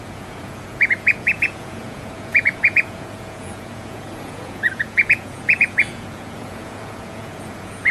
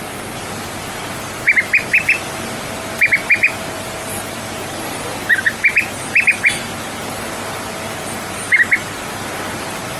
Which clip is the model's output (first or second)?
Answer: first